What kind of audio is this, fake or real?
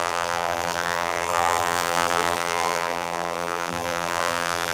fake